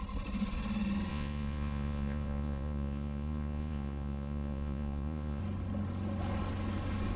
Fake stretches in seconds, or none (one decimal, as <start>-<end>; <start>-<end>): 1.1-5.4